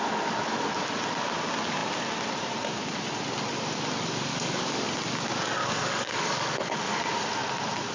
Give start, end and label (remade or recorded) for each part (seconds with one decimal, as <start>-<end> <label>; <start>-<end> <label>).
0.0-4.3 recorded; 4.3-4.8 remade; 4.8-5.6 recorded; 5.6-7.0 remade; 7.0-7.9 recorded